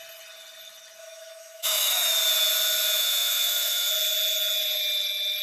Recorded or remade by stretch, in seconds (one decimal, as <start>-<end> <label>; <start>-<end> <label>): 0.0-1.0 recorded; 1.0-2.1 remade; 2.1-3.0 recorded; 3.0-3.9 remade; 3.9-5.4 recorded